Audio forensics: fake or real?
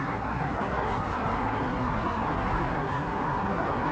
fake